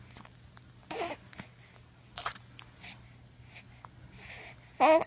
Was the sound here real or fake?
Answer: real